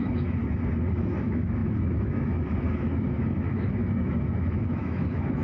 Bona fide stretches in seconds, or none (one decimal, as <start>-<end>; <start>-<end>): 0.4-1.0